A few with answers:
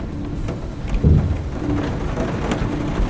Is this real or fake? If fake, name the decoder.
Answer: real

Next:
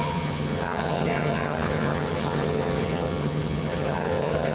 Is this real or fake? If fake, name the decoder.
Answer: fake, vocoder, HiFi-GAN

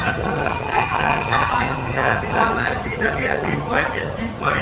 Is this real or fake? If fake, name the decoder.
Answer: fake, vocoder, HiFi-GAN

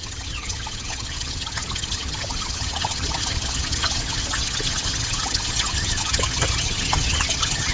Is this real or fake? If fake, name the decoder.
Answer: fake, vocoder, HiFi-GAN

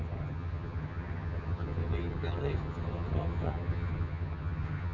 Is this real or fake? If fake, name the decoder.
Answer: fake, vocoder, HiFi-GAN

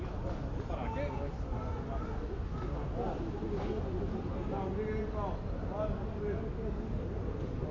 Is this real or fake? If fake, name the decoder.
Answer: real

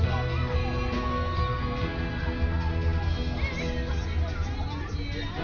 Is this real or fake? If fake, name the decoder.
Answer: real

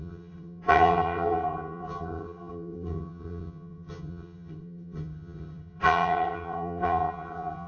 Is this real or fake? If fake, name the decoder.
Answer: fake, vocoder, HiFi-GAN